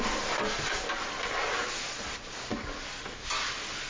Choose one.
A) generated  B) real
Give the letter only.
B